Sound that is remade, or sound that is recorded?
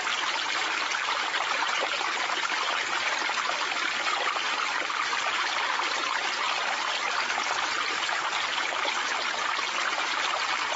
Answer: recorded